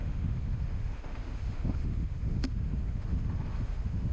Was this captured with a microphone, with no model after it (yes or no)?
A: no